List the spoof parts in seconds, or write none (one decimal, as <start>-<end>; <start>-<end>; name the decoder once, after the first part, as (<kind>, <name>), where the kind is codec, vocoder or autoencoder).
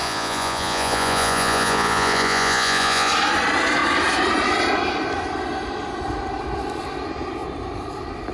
0.0-3.1 (vocoder, Vocos)